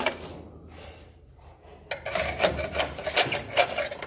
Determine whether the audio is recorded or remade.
recorded